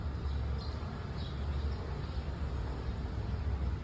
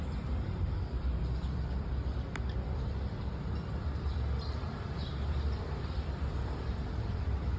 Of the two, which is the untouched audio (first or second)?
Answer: first